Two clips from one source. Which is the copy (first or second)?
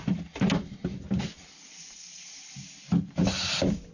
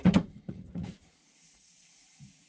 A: second